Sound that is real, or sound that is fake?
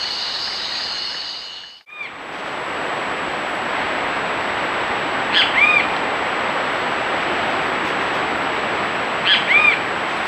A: real